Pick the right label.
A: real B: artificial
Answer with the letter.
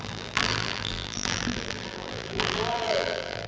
B